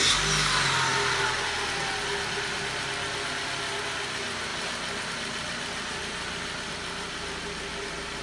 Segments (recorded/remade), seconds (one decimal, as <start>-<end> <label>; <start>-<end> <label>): 0.0-8.2 recorded